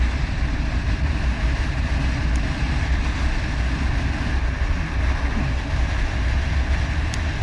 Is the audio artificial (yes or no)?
no